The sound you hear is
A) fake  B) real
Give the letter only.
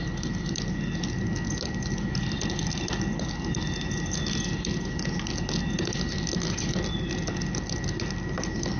B